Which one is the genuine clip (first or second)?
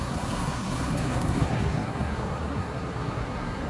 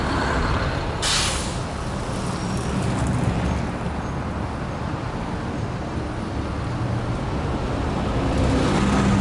second